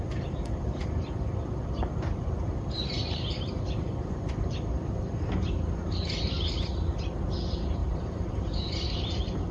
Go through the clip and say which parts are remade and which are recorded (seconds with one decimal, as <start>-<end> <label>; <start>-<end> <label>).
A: 0.0-3.0 recorded; 3.0-5.0 remade; 5.0-7.8 recorded; 7.8-9.5 remade